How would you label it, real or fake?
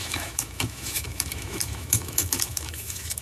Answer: fake